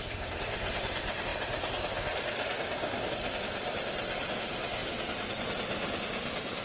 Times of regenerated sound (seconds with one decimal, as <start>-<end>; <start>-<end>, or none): none